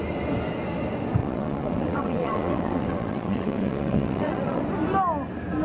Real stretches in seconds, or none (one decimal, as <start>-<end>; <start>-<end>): 0.0-1.2; 4.6-5.6